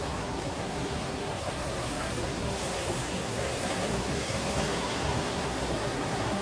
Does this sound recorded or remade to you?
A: remade